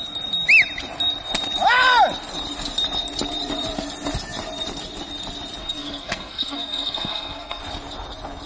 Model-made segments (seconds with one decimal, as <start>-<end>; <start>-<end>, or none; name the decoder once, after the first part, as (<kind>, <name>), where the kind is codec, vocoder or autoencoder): 5.6-7.6 (codec, SNAC)